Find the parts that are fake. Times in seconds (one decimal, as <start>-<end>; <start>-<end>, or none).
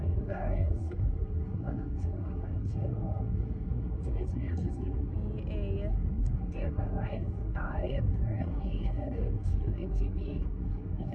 0.0-5.1; 5.9-11.1